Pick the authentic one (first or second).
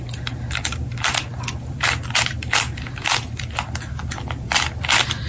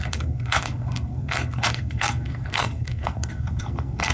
first